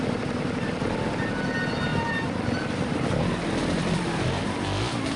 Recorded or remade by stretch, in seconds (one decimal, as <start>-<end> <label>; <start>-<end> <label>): 0.0-5.2 recorded